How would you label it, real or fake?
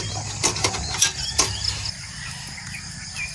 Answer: real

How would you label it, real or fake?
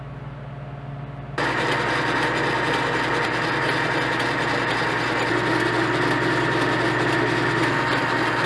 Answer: real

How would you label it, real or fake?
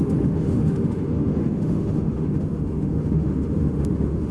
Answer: fake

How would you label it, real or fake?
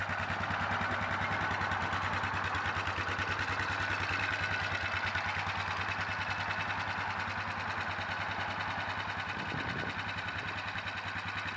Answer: real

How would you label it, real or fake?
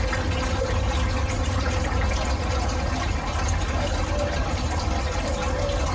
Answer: real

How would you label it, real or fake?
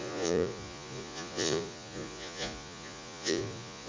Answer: fake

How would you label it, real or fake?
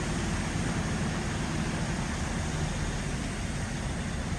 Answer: real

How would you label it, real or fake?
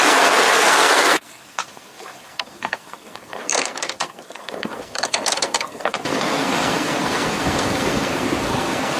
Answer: fake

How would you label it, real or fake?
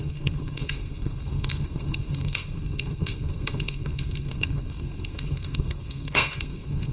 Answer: fake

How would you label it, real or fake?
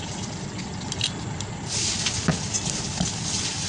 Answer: real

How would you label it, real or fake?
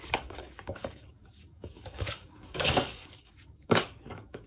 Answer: fake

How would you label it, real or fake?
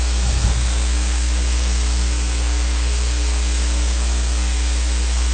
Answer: fake